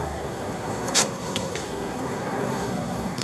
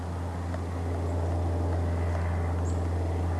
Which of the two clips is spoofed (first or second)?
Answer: first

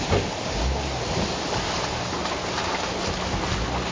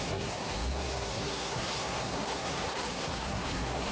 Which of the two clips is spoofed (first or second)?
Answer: second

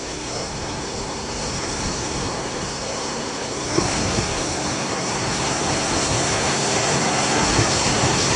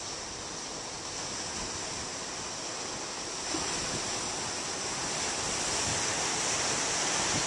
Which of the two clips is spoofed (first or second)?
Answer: first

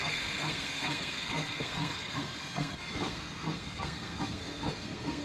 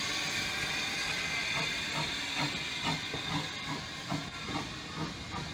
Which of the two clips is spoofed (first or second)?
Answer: first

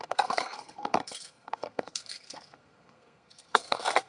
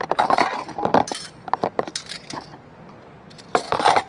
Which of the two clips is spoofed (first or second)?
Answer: first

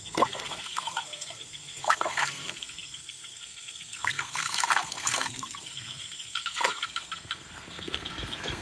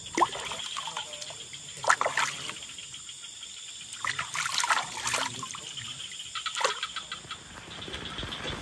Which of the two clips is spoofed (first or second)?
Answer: first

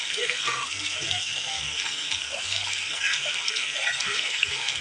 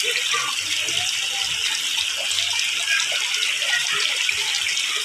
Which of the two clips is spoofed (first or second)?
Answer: first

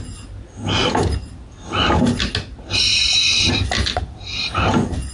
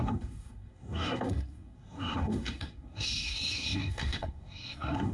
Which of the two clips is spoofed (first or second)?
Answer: second